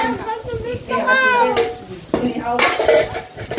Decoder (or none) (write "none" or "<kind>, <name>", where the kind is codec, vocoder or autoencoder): none